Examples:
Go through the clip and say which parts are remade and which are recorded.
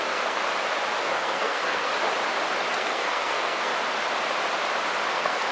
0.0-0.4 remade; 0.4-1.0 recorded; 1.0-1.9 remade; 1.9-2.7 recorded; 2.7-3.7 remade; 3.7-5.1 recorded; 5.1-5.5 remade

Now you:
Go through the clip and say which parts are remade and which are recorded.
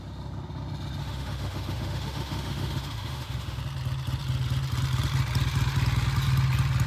0.0-1.0 recorded; 1.0-3.6 remade; 3.6-6.9 recorded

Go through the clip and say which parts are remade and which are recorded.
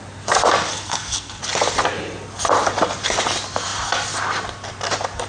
0.0-0.7 recorded; 0.7-1.4 remade; 1.4-5.3 recorded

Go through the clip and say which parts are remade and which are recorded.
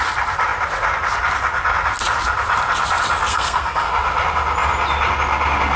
0.0-3.3 recorded; 3.3-3.9 remade; 3.9-5.8 recorded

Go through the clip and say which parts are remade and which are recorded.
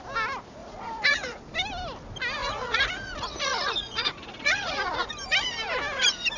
0.0-0.6 recorded; 0.6-1.4 remade; 1.4-2.4 recorded; 2.4-5.1 remade; 5.1-6.4 recorded